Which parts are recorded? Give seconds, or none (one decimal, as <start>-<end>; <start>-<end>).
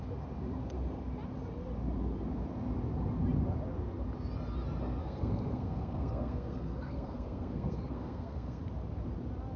0.0-5.0; 8.6-9.6